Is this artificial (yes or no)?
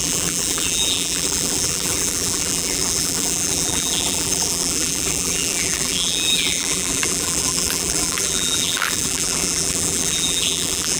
yes